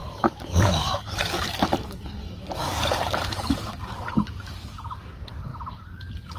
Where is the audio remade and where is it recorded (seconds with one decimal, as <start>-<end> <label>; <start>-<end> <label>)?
0.0-6.4 remade